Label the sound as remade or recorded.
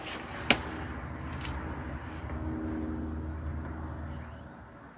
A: recorded